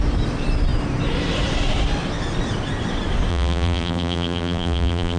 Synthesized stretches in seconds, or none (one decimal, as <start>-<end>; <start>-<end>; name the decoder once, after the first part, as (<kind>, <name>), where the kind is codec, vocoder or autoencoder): 3.3-5.2 (vocoder, BigVGAN v2)